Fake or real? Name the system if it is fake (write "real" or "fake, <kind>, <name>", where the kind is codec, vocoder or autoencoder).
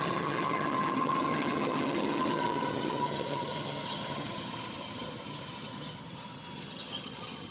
fake, vocoder, HiFi-GAN